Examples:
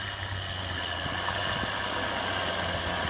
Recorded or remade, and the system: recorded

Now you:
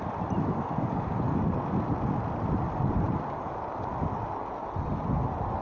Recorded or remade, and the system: recorded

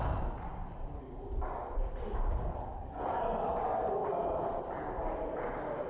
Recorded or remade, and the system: recorded